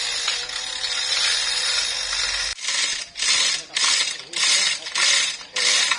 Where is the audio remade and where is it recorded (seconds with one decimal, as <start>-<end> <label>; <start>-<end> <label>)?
0.0-2.5 remade; 2.5-3.7 recorded; 3.7-6.0 remade